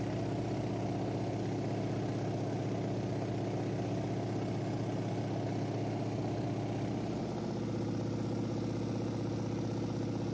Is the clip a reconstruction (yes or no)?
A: no